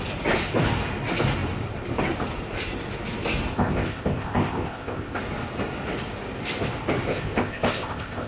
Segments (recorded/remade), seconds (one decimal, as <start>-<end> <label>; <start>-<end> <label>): 0.0-3.5 recorded; 3.5-5.2 remade; 5.2-7.1 recorded; 7.1-8.3 remade